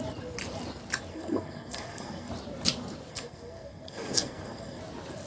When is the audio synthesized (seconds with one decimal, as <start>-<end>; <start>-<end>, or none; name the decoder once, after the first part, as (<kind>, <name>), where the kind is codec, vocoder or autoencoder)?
1.1-2.3 (codec, SNAC); 3.1-4.8

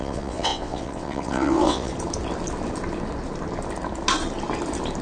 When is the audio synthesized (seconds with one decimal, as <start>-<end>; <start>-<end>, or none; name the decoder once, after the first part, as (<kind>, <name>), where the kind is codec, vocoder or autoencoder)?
0.0-1.9 (vocoder, WaveNeXt)